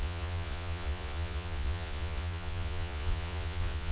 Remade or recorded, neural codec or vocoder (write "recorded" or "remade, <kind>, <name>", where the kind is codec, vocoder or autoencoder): remade, vocoder, Vocos